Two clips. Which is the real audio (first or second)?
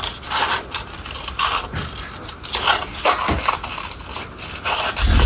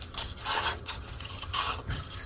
first